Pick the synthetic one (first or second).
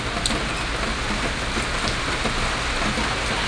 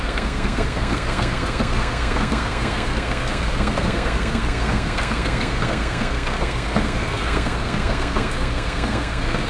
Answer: second